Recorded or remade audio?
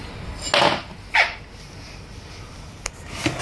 recorded